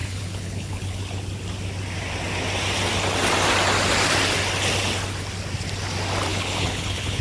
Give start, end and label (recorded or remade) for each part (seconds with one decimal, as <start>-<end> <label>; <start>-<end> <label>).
0.0-1.0 remade; 1.0-6.3 recorded; 6.3-7.2 remade